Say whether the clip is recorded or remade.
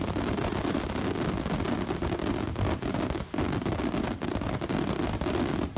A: recorded